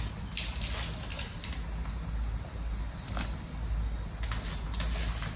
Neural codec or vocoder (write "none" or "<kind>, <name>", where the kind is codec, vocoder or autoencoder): none